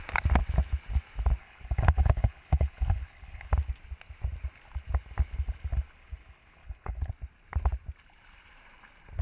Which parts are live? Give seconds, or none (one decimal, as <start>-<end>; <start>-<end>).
0.0-1.4; 3.5-6.6; 7.1-9.2